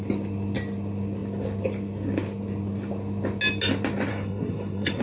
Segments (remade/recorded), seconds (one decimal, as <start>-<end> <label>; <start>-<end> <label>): 0.0-4.1 recorded; 4.1-5.0 remade